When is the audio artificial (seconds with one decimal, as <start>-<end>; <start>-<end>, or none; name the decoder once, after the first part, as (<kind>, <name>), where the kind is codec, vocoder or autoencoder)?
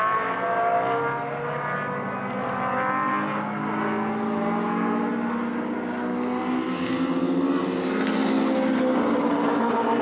none